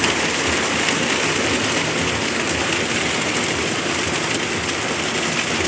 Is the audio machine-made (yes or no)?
no